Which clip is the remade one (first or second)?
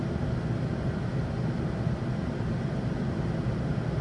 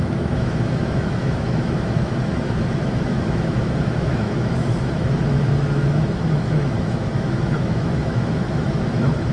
second